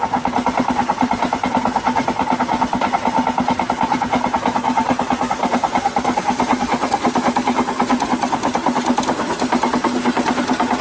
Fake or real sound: real